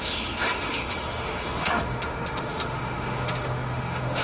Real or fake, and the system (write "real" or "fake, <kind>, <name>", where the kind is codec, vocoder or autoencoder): fake, autoencoder, DAC-VAE